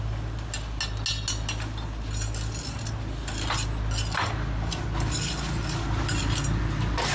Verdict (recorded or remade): recorded